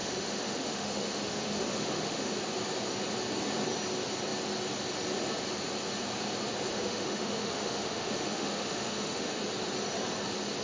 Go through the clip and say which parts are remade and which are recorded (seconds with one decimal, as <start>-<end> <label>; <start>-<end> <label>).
0.0-2.3 remade; 2.3-6.7 recorded; 6.7-9.4 remade; 9.4-10.6 recorded

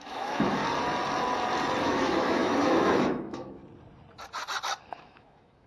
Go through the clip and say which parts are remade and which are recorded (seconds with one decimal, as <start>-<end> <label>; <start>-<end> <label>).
0.0-0.6 remade; 0.6-1.8 recorded; 1.8-3.6 remade; 3.6-4.8 recorded; 4.8-5.7 remade

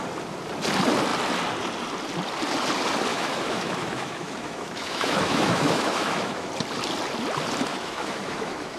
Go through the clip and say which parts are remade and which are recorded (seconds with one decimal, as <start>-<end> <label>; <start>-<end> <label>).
0.0-3.1 recorded; 3.1-6.5 remade; 6.5-7.7 recorded; 7.7-8.8 remade

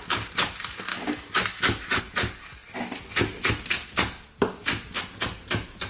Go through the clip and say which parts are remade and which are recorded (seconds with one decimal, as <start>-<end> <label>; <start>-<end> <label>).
0.0-0.9 recorded; 0.9-2.0 remade; 2.0-5.9 recorded

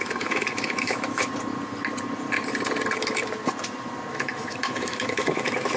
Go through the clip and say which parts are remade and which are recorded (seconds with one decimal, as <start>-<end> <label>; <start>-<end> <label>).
0.0-1.3 remade; 1.3-4.1 recorded; 4.1-5.8 remade

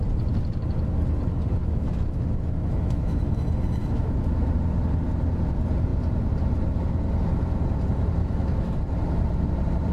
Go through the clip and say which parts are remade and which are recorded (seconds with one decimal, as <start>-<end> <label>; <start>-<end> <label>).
0.0-1.6 recorded; 1.6-3.4 remade; 3.4-3.8 recorded; 3.8-4.5 remade; 4.5-8.2 recorded; 8.2-8.7 remade; 8.7-9.9 recorded

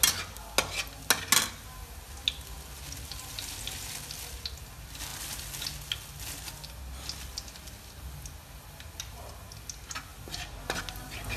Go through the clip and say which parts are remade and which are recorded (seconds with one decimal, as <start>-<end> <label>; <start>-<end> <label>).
0.0-11.4 recorded